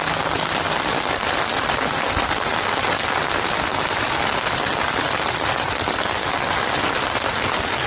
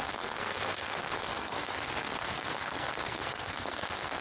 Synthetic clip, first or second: second